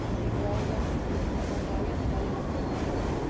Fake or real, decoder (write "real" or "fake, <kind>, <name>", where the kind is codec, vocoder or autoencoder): real